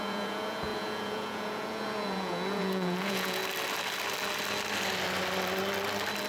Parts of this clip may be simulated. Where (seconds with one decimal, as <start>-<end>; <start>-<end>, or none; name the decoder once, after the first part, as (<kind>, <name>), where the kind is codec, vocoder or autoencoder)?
0.0-3.4 (vocoder, Vocos)